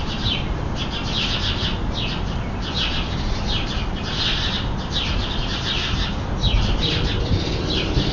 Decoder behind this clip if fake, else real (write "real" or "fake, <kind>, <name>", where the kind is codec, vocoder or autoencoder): real